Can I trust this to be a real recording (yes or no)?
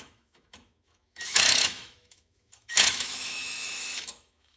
no